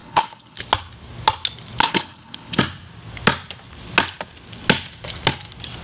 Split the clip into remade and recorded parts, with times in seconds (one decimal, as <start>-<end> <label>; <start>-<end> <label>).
0.0-0.6 remade; 0.6-1.8 recorded; 1.8-2.6 remade; 2.6-5.8 recorded